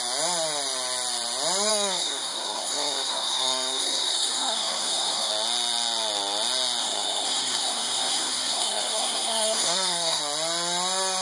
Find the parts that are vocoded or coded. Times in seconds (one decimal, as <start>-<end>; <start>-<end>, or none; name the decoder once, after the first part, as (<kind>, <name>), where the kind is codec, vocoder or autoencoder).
1.7-5.3 (codec, SNAC); 6.8-10.2